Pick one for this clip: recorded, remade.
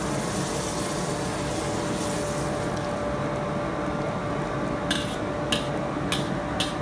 recorded